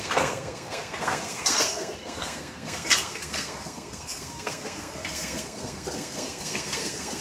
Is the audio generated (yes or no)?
yes